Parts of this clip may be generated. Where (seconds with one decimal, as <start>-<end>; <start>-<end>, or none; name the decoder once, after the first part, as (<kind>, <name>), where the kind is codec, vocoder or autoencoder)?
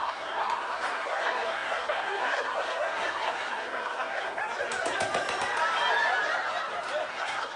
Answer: 0.0-4.4 (codec, SNAC); 7.1-7.6